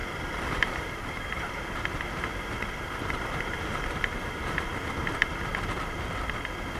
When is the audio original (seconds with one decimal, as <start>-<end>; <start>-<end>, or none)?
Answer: 0.0-0.5; 4.7-6.8